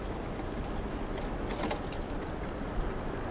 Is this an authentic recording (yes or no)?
yes